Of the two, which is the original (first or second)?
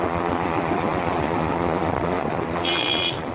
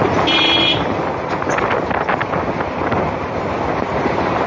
second